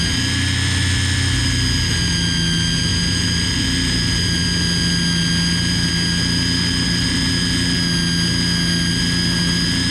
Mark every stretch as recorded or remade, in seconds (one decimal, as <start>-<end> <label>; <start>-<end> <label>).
0.0-9.9 recorded